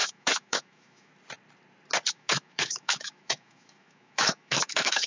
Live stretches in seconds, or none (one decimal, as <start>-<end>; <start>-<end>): 1.1-2.1